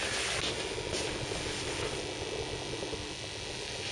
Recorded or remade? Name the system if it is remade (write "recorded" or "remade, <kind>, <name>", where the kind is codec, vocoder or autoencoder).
recorded